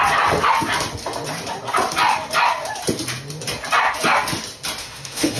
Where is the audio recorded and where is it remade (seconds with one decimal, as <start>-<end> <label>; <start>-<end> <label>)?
0.0-4.8 recorded; 4.8-5.4 remade